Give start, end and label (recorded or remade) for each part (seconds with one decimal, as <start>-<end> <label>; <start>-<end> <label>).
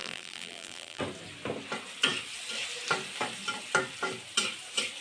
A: 0.0-1.0 remade; 1.0-5.0 recorded